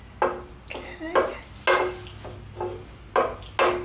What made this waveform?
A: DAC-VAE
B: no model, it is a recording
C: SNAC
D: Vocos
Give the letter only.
B